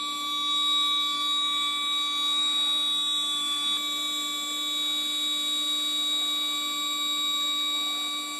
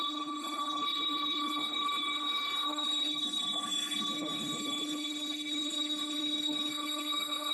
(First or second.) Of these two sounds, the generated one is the second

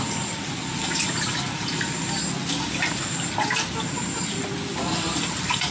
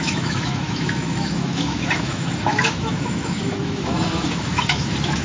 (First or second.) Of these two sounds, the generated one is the second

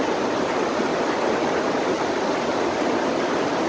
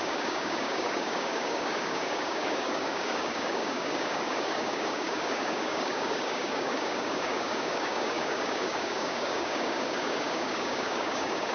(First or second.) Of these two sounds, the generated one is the second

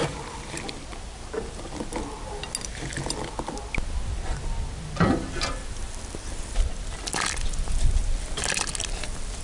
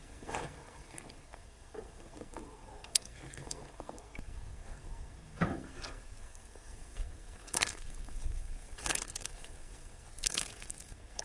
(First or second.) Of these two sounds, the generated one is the second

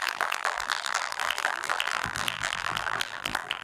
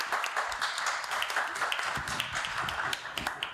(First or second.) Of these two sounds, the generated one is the first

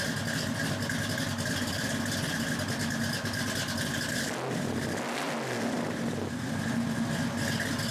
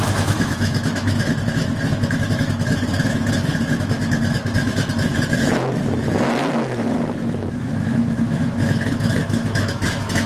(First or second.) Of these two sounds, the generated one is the second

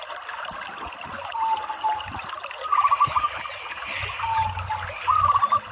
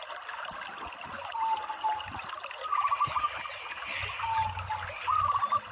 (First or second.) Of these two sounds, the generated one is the first